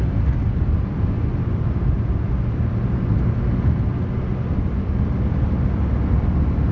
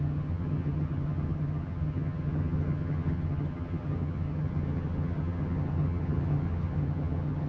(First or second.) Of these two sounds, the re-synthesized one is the second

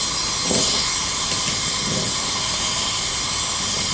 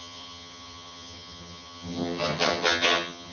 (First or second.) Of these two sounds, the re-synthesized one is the second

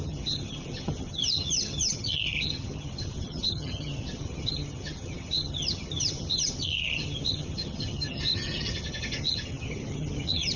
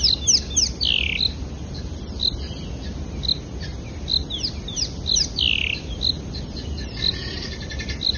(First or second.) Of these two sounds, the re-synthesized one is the first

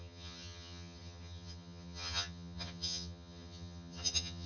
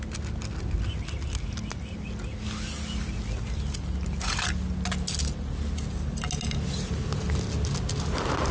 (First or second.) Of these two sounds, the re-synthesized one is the first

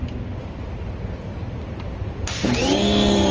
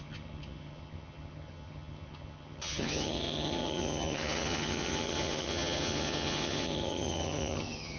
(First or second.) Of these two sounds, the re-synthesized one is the second